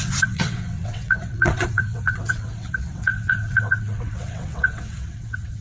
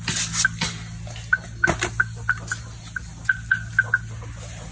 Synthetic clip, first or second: first